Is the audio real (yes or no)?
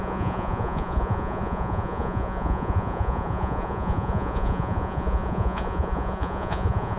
no